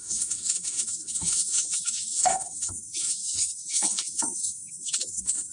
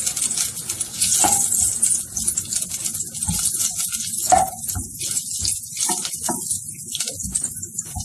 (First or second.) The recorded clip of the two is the second